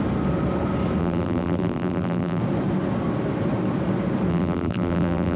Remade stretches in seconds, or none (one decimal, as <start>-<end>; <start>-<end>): 1.0-2.4; 4.3-5.4